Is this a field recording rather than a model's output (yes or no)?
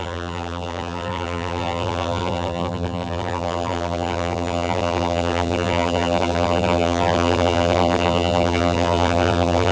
no